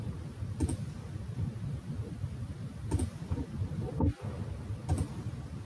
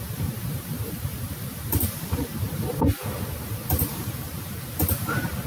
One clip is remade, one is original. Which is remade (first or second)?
second